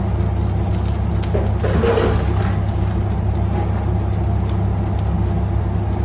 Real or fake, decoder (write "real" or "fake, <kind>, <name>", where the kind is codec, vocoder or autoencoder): real